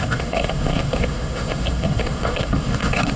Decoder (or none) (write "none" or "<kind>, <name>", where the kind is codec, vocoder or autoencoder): codec, SNAC